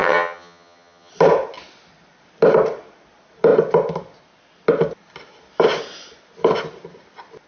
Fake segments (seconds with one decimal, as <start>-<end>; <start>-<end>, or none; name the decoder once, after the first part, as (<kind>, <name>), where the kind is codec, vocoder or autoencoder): 0.0-1.1 (vocoder, HiFi-GAN)